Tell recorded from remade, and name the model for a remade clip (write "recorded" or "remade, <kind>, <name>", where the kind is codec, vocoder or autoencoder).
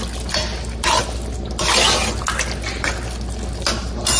recorded